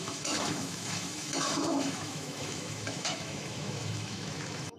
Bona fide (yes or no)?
no